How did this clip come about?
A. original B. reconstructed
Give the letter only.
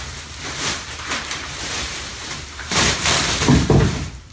B